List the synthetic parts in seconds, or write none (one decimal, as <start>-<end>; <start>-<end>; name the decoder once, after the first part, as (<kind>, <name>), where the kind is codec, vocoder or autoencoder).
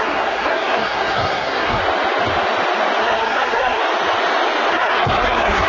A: 0.0-1.8 (codec, SNAC); 3.0-3.8; 4.7-5.7